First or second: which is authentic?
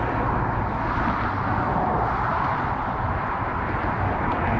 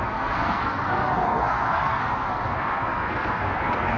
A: first